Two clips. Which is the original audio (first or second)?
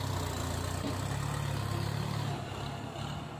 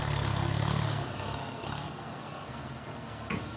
first